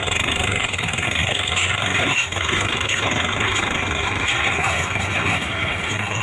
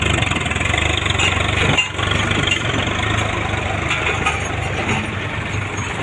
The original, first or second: second